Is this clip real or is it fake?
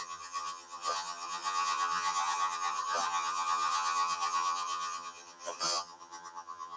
fake